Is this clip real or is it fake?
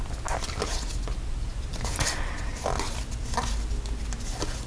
real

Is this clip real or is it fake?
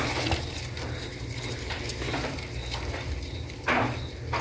real